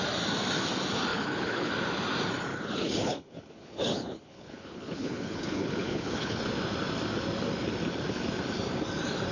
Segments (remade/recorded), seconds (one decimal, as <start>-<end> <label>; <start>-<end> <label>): 0.0-1.1 recorded; 1.1-1.7 remade; 1.7-2.5 recorded; 2.5-6.4 remade; 6.4-9.3 recorded

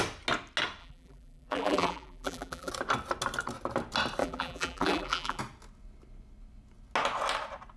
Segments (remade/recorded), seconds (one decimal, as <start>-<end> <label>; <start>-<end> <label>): 0.0-0.8 recorded; 0.8-2.7 remade; 2.7-4.2 recorded; 4.2-5.4 remade; 5.4-7.8 recorded